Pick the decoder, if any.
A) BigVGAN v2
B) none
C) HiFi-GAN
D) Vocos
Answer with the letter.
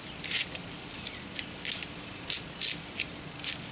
B